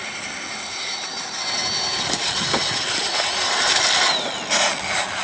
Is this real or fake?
real